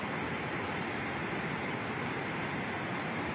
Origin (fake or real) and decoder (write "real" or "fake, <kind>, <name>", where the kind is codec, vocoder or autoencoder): fake, vocoder, BigVGAN v2